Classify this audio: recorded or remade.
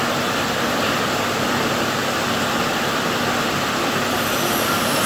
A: recorded